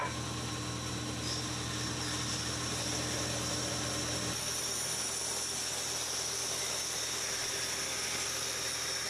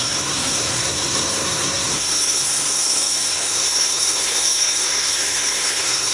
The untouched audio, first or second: first